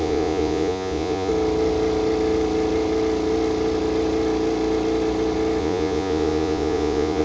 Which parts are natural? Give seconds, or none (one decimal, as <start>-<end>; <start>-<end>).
1.3-5.6